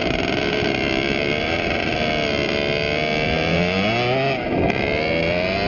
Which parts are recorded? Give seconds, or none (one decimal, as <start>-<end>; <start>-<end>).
0.0-5.7